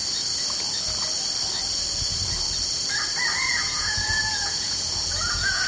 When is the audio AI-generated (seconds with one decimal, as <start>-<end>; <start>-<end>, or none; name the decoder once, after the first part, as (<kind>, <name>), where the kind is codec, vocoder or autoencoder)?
3.4-5.7 (vocoder, Vocos)